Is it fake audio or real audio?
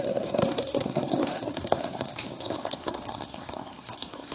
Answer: fake